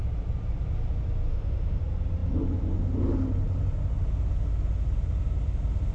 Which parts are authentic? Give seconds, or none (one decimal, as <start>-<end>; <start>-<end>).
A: 0.0-1.3; 1.8-5.9